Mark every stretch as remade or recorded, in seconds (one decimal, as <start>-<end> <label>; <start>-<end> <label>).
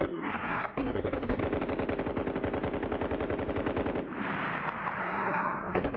0.0-1.4 remade; 1.4-5.0 recorded; 5.0-6.0 remade